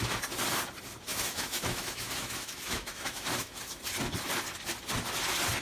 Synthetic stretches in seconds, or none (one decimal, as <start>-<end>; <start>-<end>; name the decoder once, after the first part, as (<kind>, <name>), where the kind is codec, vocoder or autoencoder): 1.1-3.8 (autoencoder, DAC-VAE)